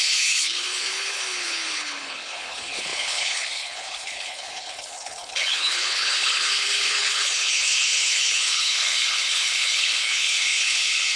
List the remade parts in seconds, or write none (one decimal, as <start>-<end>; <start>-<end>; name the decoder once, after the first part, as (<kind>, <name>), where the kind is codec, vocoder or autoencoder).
0.0-11.2 (codec, HILCodec)